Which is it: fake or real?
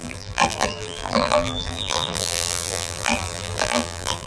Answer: fake